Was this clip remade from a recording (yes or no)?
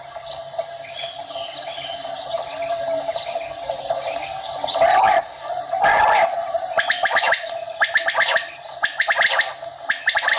no